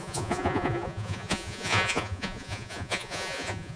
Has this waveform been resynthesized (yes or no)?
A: yes